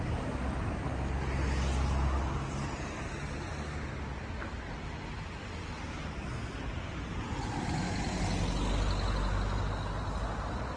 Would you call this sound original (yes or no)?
yes